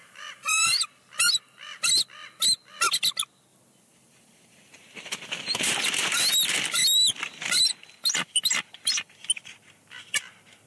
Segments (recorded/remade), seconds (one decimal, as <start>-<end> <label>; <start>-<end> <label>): 0.0-0.8 remade; 0.8-3.5 recorded; 3.5-7.9 remade; 7.9-10.7 recorded